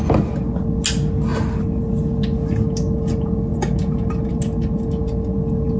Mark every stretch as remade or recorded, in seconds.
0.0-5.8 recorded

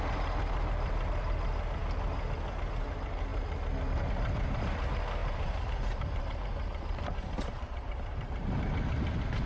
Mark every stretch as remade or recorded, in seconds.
0.0-5.2 recorded; 5.2-8.5 remade; 8.5-9.5 recorded